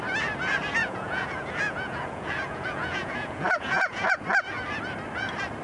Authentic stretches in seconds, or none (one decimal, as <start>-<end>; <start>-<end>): 0.0-0.8; 4.2-5.6